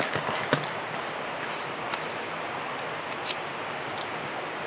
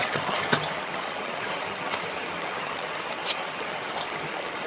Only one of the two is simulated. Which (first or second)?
second